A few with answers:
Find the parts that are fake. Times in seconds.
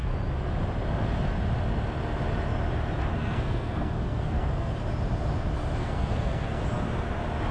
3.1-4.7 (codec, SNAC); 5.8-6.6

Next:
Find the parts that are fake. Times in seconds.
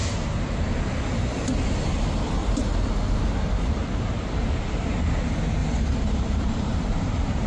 2.4-3.2 (vocoder, BigVGAN v2); 5.6-7.5